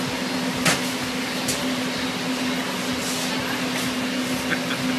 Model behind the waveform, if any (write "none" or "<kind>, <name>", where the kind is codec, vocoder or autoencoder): none